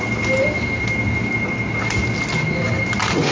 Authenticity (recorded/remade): recorded